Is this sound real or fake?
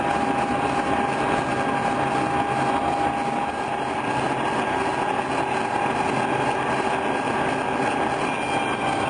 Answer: real